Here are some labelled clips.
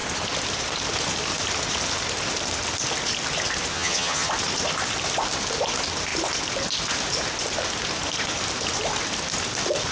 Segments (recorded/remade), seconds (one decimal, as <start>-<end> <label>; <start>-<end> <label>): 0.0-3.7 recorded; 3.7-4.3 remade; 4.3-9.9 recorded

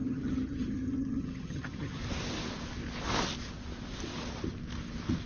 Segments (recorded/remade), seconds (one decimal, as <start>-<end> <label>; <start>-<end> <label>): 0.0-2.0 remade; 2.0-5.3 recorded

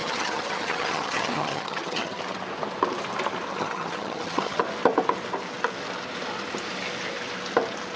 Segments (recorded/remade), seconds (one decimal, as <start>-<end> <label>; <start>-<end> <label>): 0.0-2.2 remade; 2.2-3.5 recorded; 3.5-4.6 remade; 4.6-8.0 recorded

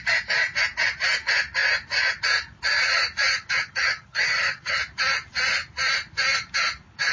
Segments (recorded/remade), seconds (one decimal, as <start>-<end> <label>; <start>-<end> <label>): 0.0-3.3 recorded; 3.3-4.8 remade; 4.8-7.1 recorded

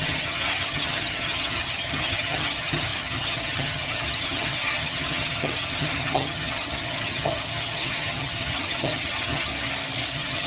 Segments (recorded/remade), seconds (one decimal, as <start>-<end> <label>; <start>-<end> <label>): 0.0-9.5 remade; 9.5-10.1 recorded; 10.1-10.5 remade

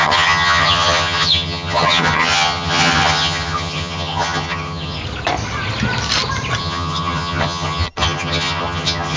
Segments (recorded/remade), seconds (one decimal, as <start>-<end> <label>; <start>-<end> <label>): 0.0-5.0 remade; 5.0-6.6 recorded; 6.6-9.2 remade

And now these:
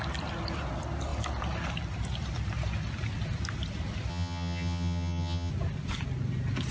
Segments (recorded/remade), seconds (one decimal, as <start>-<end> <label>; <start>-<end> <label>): 0.0-4.1 recorded; 4.1-5.5 remade; 5.5-6.7 recorded

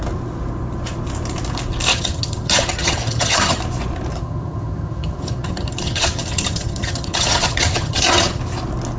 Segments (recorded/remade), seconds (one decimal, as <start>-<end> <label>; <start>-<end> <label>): 0.0-1.9 recorded; 1.9-3.6 remade; 3.6-4.1 recorded; 4.1-8.4 remade; 8.4-9.0 recorded